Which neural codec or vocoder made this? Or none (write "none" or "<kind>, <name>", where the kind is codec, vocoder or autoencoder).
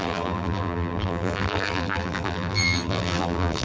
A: vocoder, BigVGAN v2